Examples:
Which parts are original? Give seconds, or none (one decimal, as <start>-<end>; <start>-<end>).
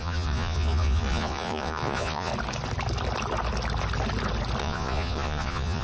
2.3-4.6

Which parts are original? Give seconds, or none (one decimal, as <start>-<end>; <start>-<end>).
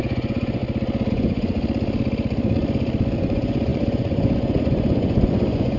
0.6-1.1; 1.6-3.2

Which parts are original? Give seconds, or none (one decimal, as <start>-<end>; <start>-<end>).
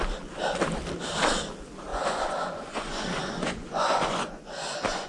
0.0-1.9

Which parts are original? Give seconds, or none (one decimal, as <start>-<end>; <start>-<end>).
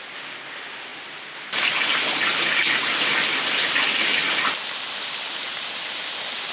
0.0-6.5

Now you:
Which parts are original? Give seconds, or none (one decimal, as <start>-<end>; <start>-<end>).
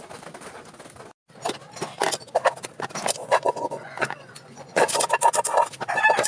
0.0-3.2; 5.0-6.3